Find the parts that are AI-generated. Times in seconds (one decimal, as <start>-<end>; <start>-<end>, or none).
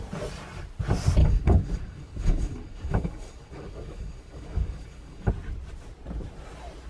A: 1.2-5.3